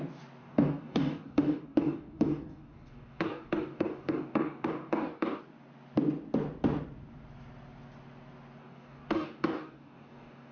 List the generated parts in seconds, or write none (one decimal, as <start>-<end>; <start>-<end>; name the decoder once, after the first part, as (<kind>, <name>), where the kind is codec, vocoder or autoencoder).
0.4-5.4 (codec, DAC); 8.6-10.5